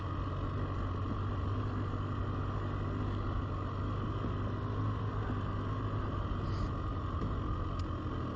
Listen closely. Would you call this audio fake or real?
real